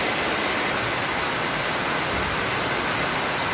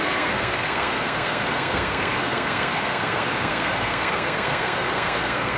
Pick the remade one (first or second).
second